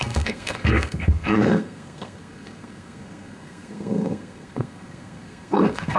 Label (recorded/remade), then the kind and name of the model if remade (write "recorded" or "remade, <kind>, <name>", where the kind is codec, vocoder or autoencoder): remade, codec, SNAC